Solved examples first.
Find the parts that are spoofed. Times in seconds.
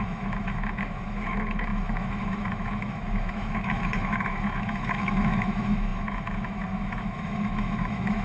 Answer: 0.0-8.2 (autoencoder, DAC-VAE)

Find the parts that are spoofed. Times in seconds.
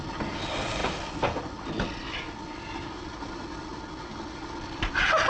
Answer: none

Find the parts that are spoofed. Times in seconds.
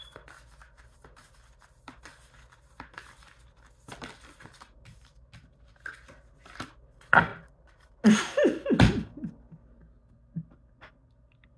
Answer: none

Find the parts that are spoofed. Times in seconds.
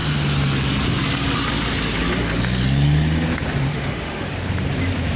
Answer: 3.7-4.3 (autoencoder, DAC-VAE)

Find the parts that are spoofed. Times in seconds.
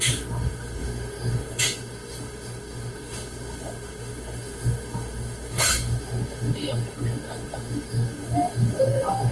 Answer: 0.0-9.3 (autoencoder, DAC-VAE)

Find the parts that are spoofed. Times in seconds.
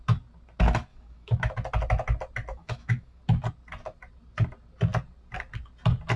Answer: 0.9-1.5 (autoencoder, DAC-VAE); 2.5-3.2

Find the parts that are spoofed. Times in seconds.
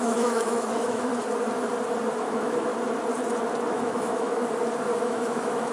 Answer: 0.0-1.1 (autoencoder, DAC-VAE); 2.2-2.7; 3.7-4.4; 5.0-5.7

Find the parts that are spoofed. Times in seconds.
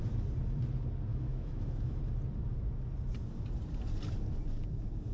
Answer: 1.1-2.0 (autoencoder, DAC-VAE)